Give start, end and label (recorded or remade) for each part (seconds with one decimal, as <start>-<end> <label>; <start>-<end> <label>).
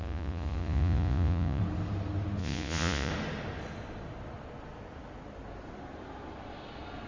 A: 0.0-1.6 remade; 1.6-2.4 recorded; 2.4-3.1 remade; 3.1-7.1 recorded